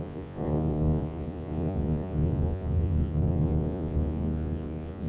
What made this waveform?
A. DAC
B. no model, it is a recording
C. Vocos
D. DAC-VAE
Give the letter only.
C